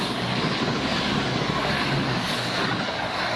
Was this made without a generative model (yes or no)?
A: no